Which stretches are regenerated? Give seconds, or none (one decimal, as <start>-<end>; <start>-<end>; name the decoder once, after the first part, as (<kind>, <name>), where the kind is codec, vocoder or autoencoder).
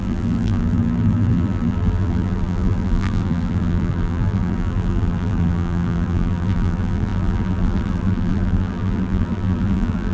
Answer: 0.0-10.1 (vocoder, BigVGAN v2)